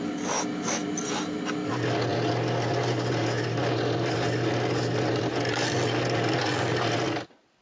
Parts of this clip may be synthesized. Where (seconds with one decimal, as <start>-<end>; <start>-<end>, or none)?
none